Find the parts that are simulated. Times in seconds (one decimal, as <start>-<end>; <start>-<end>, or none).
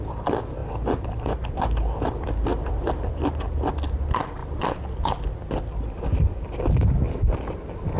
0.6-1.5; 2.5-3.1; 4.4-5.3